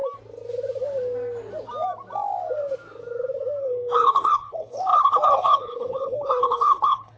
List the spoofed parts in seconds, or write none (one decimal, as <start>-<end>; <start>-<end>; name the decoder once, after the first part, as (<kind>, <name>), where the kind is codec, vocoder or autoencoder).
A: 3.6-7.2 (codec, HILCodec)